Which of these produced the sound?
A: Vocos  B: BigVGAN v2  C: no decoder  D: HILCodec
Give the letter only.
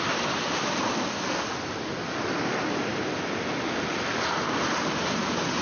C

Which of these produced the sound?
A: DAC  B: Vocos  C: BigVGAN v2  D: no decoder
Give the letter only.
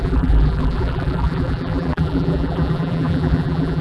C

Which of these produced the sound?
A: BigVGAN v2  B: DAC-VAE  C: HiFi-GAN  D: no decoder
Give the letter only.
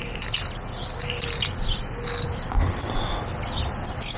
D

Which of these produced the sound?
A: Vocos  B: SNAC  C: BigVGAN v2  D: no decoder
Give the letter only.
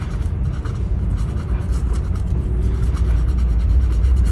C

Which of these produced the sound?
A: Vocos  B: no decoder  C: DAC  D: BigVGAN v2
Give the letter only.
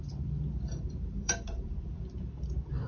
D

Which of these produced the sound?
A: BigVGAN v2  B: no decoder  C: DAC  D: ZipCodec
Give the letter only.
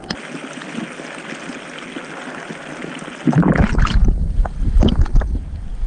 B